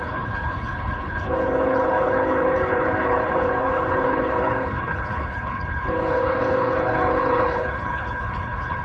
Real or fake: fake